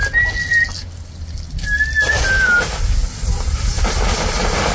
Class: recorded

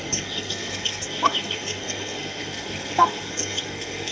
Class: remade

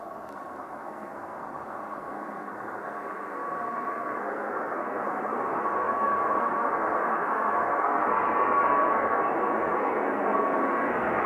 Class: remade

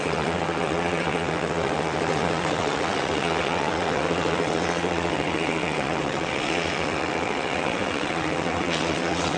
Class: remade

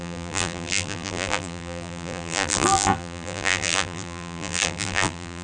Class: remade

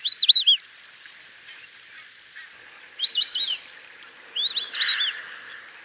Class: recorded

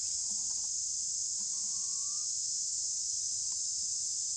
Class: remade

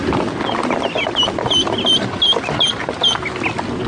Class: recorded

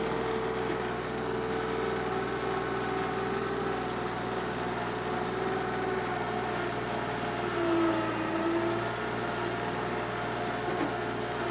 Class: recorded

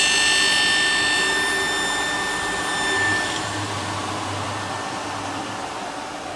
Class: recorded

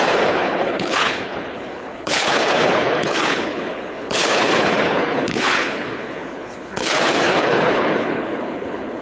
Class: remade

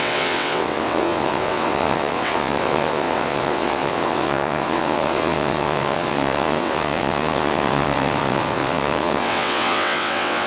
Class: remade